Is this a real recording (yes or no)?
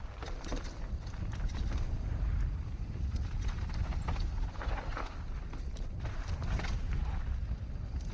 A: no